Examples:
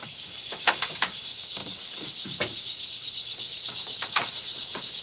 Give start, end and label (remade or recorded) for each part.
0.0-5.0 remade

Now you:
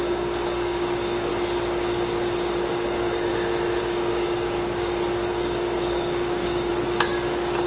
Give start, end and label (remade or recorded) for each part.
0.0-1.3 remade; 1.3-2.7 recorded; 2.7-3.3 remade; 3.3-3.8 recorded; 3.8-7.7 remade

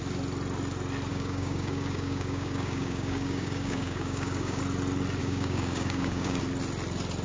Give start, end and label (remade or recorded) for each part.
0.0-1.1 recorded; 1.1-4.6 remade; 4.6-5.2 recorded; 5.2-6.4 remade; 6.4-7.2 recorded

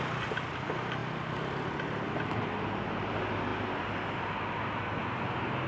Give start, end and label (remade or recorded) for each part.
0.0-5.7 recorded